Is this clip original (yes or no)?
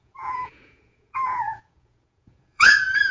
no